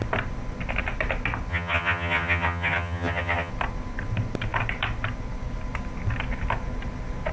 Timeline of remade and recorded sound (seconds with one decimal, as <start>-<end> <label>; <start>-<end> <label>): 0.0-1.5 recorded; 1.5-3.5 remade; 3.5-7.3 recorded